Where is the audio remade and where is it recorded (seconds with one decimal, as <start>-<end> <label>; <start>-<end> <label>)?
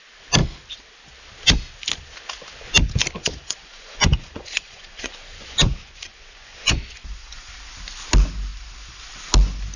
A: 0.0-3.2 recorded; 3.2-7.5 remade; 7.5-9.8 recorded